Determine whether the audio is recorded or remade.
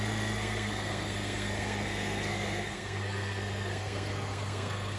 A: remade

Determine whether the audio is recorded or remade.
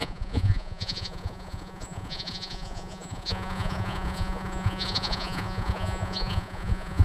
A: remade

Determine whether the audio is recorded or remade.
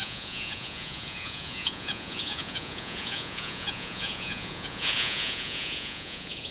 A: remade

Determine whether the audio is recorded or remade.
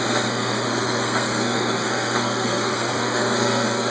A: remade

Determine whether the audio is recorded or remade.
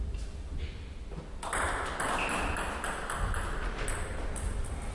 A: recorded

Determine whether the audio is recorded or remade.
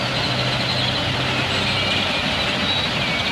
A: recorded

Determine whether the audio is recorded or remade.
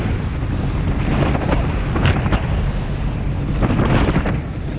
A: recorded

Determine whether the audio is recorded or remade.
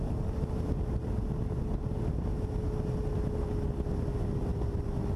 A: recorded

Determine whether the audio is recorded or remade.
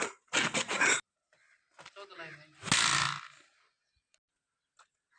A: recorded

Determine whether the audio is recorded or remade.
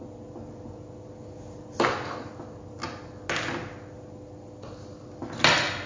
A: recorded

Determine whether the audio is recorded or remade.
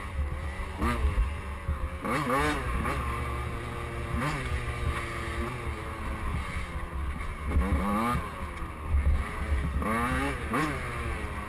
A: recorded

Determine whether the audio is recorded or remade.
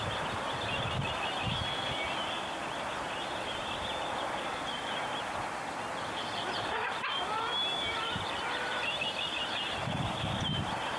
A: recorded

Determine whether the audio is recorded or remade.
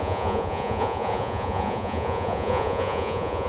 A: remade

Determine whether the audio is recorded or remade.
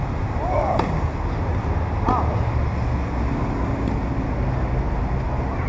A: recorded